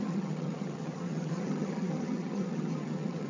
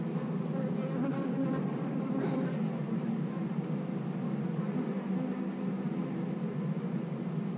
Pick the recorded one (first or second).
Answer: second